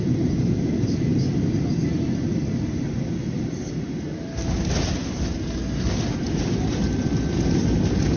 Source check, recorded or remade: recorded